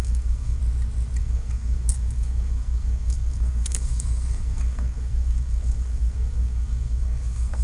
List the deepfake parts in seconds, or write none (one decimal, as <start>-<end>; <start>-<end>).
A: 0.0-0.6; 1.2-7.6

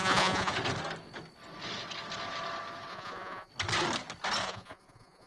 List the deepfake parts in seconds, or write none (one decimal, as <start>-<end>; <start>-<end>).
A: 0.0-0.5; 2.9-3.5; 4.4-5.3

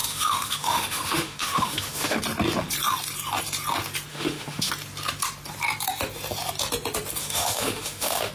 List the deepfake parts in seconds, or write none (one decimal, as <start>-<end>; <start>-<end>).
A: 0.0-2.2; 4.1-4.7; 7.2-8.3

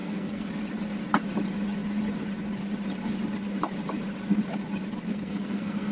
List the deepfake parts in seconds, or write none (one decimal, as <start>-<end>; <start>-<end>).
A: 0.0-0.5; 5.1-5.9

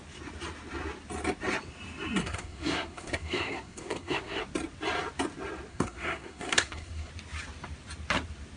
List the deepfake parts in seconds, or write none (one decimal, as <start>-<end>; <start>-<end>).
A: 2.2-4.4; 5.7-7.1

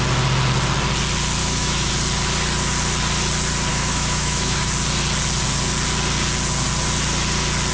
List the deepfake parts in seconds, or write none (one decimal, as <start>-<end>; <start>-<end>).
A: 1.4-1.9; 3.7-4.6